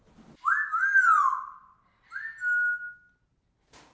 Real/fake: real